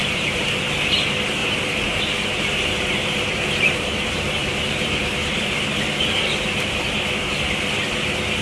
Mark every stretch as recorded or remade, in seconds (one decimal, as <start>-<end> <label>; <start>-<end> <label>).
0.0-0.6 remade; 0.6-1.4 recorded; 1.4-2.0 remade; 2.0-3.0 recorded; 3.0-6.7 remade; 6.7-8.4 recorded